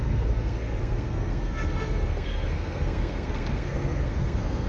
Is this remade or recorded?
remade